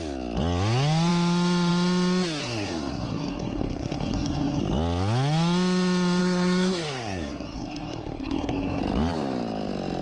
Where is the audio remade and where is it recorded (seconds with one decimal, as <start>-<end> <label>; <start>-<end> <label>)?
0.0-2.4 recorded; 2.4-4.6 remade; 4.6-6.2 recorded; 6.2-8.8 remade; 8.8-10.0 recorded